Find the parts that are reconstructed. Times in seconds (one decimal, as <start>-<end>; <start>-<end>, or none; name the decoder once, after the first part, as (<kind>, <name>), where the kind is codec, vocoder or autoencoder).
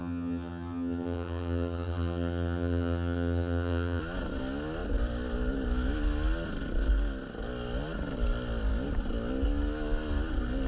0.0-4.0 (vocoder, HiFi-GAN)